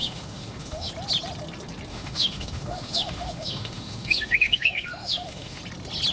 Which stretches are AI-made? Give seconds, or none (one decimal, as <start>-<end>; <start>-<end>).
0.0-0.9; 1.9-5.6

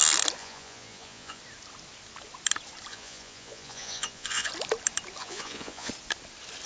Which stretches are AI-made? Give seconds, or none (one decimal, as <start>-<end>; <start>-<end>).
0.4-1.4; 2.9-4.5; 5.2-5.9

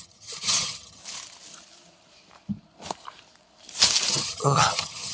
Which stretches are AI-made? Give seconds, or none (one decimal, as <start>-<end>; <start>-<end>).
0.0-1.0; 4.1-5.1